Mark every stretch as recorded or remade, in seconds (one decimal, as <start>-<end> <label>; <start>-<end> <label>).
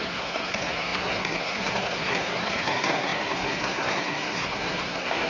0.0-5.3 remade